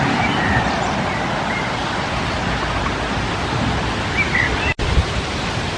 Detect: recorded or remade recorded